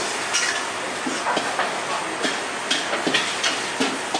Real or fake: real